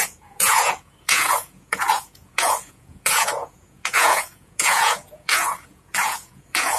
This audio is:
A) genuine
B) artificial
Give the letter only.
B